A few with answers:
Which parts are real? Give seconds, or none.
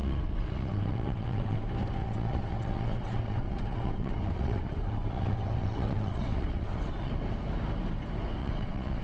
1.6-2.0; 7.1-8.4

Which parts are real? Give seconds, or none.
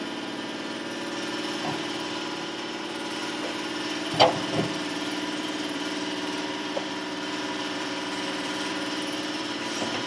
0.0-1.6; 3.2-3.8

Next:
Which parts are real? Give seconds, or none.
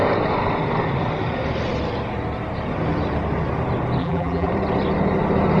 0.0-4.0; 4.5-5.6